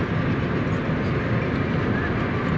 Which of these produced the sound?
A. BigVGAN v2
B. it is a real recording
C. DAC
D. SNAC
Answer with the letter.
B